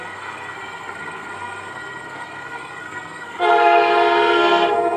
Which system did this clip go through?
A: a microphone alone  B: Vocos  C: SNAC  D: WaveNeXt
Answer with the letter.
C